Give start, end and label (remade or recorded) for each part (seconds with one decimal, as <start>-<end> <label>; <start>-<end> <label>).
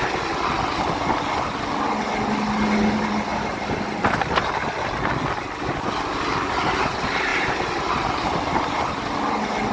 0.0-3.3 recorded; 3.3-4.5 remade; 4.5-7.3 recorded; 7.3-8.8 remade; 8.8-9.7 recorded